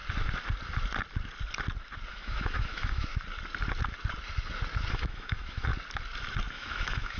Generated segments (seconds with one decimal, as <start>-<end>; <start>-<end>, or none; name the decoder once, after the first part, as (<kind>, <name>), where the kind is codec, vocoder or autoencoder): 2.1-3.1 (autoencoder, DAC-VAE); 4.9-5.7; 6.5-7.2